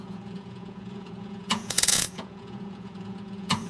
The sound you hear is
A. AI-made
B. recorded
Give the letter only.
A